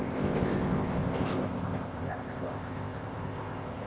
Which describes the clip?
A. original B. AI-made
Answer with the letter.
B